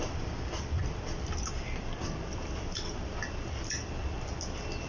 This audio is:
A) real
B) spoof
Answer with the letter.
A